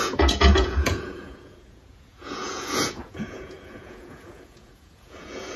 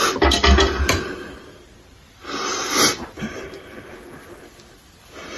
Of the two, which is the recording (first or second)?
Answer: second